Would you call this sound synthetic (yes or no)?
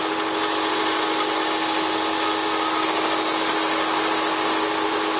no